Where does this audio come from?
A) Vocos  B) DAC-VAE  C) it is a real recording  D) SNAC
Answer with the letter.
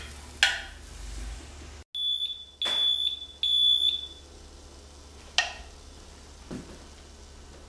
C